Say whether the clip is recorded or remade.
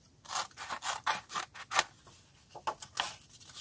recorded